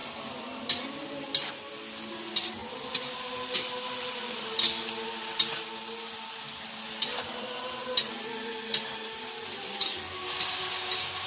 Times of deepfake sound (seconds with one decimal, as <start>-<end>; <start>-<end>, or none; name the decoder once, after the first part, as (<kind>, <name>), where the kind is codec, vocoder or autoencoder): 0.0-1.5 (vocoder, BigVGAN v2); 7.8-10.7

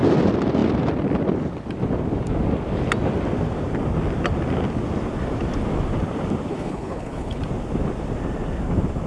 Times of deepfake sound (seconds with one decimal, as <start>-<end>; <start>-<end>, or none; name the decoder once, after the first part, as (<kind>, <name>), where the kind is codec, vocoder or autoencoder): 6.5-7.4 (codec, HILCodec)

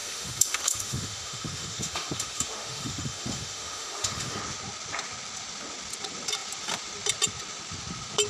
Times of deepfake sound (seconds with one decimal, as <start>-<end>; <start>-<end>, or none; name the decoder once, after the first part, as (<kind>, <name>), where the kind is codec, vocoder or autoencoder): 0.0-4.4 (autoencoder, DAC-VAE)

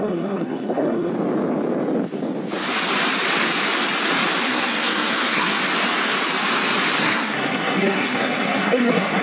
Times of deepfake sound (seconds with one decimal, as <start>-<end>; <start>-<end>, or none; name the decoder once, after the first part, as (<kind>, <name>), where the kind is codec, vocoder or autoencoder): 0.0-1.1 (codec, SNAC); 4.4-5.5; 7.0-9.2

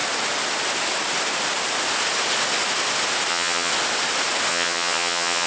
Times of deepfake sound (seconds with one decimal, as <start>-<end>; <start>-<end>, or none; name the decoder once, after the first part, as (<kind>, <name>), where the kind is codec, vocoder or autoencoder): 3.3-3.7 (vocoder, HiFi-GAN); 4.5-5.5

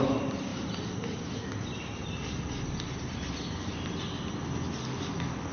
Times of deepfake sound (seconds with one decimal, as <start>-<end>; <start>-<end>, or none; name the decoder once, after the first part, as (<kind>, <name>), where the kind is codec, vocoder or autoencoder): 0.5-1.3 (vocoder, BigVGAN v2)

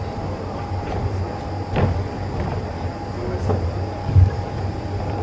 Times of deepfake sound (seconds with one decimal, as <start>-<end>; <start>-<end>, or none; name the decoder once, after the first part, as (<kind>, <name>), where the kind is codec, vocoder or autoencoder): 4.0-4.5 (codec, DAC)